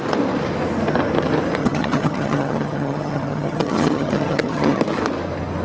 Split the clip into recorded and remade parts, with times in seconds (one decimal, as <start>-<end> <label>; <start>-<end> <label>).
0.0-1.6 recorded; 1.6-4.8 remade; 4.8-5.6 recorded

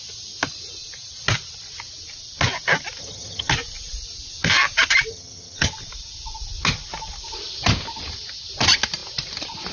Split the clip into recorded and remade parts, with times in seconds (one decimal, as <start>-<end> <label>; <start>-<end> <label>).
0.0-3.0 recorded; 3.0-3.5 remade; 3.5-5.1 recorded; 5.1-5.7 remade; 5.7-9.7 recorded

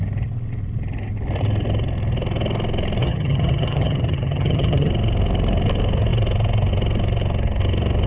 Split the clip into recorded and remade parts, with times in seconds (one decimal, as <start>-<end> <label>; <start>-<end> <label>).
0.0-3.0 recorded; 3.0-4.9 remade; 4.9-8.1 recorded

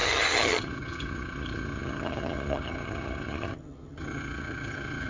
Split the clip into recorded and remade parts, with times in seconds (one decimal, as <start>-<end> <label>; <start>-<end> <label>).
0.0-5.1 remade

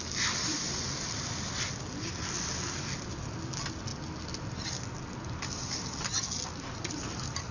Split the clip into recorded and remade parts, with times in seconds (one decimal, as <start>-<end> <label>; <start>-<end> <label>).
0.0-7.5 recorded

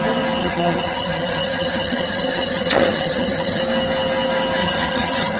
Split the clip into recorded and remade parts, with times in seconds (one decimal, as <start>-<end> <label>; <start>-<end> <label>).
0.0-0.4 recorded; 0.4-3.6 remade; 3.6-4.6 recorded; 4.6-5.4 remade